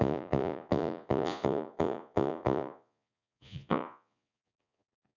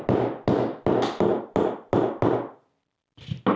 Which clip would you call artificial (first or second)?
first